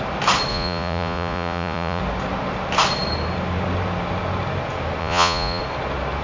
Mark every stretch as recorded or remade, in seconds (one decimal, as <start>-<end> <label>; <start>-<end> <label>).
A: 0.0-0.5 recorded; 0.5-2.0 remade; 2.0-5.0 recorded; 5.0-5.6 remade; 5.6-6.2 recorded